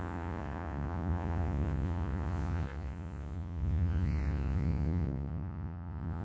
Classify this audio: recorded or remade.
remade